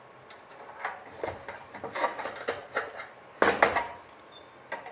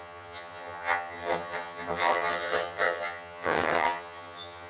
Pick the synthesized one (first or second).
second